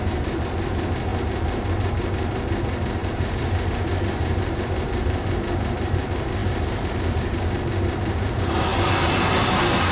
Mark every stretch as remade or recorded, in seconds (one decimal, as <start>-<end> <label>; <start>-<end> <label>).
0.0-9.9 remade